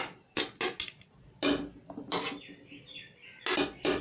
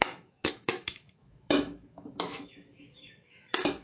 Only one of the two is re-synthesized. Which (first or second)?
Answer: second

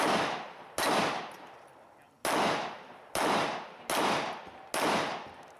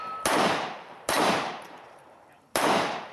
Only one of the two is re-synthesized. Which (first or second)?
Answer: second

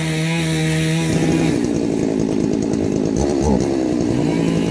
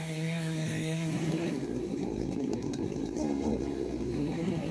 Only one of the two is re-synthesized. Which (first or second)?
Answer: second